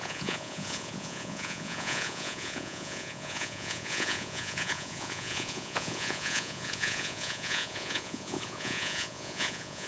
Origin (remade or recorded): remade